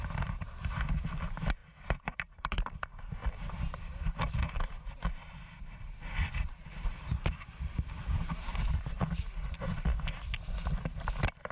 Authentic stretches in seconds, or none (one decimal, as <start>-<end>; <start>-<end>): 0.0-1.6; 2.8-11.5